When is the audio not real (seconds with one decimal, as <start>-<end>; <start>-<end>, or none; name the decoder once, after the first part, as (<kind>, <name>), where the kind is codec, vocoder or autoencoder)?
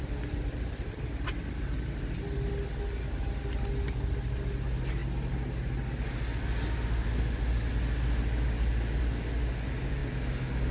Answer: none